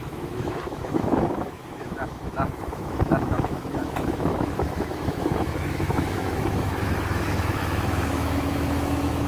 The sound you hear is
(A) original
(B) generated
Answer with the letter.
B